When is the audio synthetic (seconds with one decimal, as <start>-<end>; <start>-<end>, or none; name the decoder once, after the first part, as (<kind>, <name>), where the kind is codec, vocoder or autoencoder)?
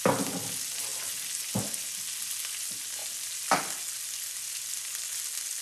none